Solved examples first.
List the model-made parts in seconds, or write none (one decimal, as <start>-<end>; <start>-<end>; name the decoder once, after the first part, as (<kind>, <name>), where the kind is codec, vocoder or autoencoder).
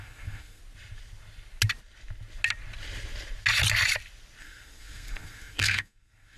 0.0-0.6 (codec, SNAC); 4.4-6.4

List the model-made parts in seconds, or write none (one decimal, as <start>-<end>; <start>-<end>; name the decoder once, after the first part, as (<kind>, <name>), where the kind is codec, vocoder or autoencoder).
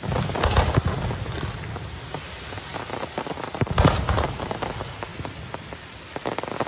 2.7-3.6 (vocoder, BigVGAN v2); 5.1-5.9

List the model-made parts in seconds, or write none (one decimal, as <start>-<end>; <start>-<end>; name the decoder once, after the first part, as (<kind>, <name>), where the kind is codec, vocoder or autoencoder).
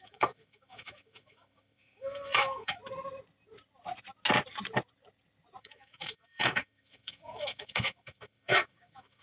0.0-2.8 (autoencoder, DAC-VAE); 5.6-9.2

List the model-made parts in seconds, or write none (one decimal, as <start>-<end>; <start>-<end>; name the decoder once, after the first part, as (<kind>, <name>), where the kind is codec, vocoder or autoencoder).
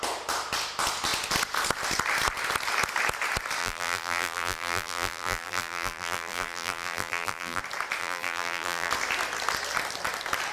3.6-7.6 (vocoder, BigVGAN v2); 8.0-8.9